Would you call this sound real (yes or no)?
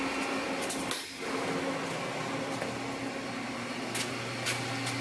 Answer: yes